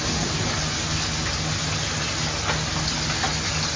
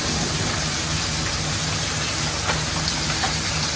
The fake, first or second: second